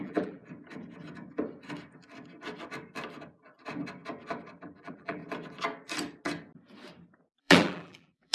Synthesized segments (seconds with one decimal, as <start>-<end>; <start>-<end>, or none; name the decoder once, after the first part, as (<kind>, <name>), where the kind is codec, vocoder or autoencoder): 0.0-0.4 (vocoder, BigVGAN v2); 4.6-5.2; 7.4-8.3